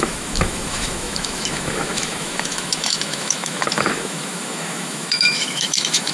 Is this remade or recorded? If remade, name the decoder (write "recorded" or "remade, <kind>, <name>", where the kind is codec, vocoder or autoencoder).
remade, autoencoder, DAC-VAE